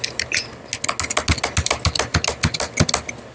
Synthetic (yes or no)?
no